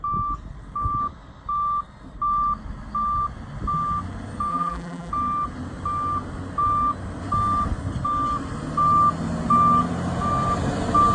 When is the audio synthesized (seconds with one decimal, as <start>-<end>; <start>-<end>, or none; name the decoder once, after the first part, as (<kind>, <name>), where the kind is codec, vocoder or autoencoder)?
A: 4.5-5.1 (vocoder, BigVGAN v2)